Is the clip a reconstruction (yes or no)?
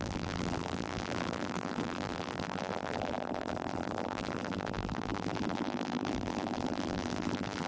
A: yes